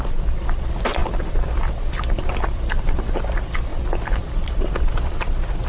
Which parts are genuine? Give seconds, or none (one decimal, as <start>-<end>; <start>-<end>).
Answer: 0.0-5.7